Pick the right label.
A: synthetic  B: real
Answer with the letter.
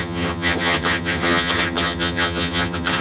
A